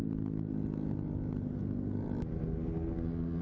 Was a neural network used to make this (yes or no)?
no